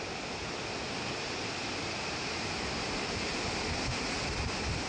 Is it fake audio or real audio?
real